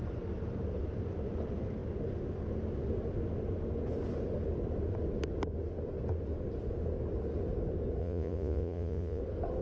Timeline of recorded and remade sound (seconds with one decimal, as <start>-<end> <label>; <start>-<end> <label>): 0.0-8.0 recorded; 8.0-9.2 remade; 9.2-9.6 recorded